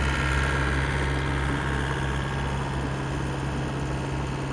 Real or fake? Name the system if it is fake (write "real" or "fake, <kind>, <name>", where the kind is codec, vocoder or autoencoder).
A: real